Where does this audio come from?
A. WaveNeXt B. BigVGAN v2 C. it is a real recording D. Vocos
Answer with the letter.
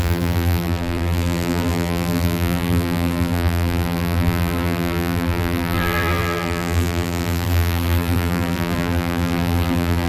B